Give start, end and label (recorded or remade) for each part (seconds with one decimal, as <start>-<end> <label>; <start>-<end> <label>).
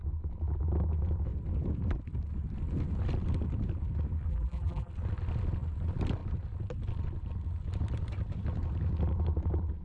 0.0-4.3 recorded; 4.3-4.9 remade; 4.9-9.8 recorded